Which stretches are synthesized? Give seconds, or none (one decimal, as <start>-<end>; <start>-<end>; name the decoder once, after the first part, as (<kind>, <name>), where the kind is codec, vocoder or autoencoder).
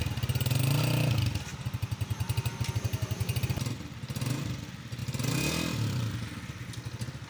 none